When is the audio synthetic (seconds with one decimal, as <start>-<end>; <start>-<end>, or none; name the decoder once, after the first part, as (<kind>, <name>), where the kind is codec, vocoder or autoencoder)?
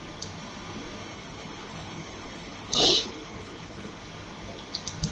1.1-4.0 (codec, HILCodec)